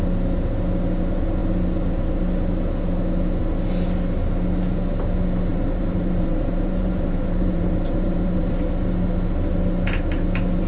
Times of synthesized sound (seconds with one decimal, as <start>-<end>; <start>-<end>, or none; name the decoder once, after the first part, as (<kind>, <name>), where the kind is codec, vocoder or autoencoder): 5.5-8.5 (vocoder, BigVGAN v2)